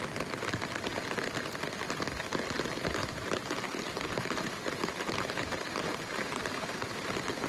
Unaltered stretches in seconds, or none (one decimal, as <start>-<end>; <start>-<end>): 0.0-3.0; 7.1-7.5

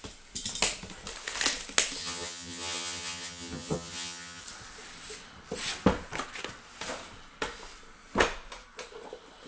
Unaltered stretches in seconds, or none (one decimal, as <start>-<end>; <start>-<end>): 0.0-2.0; 4.4-9.5

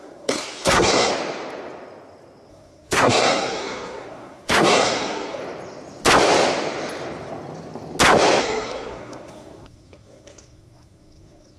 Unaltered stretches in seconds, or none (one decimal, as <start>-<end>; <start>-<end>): 1.1-2.5; 5.4-8.4

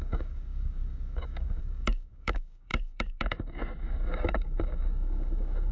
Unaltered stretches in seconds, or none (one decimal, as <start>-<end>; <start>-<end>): none

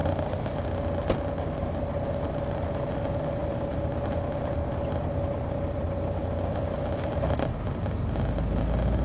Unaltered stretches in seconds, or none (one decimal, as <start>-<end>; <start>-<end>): 0.0-9.0

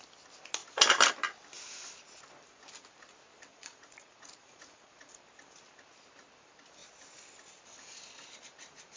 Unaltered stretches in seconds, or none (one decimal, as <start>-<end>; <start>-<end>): 0.0-3.5; 5.2-9.0